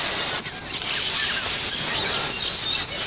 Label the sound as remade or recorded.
recorded